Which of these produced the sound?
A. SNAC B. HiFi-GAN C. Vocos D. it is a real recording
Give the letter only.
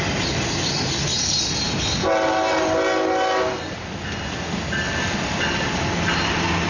D